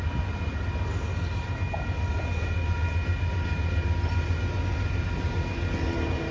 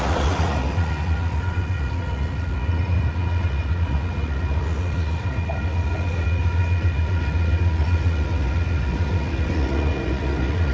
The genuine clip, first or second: first